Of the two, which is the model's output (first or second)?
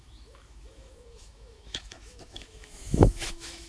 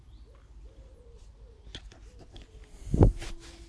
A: first